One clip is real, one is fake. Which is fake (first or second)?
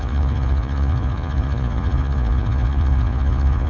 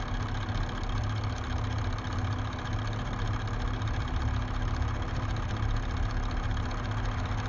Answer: first